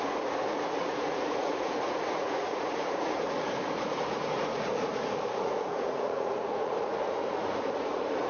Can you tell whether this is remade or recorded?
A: remade